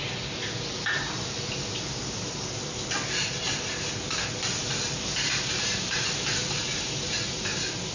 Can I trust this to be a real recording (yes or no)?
yes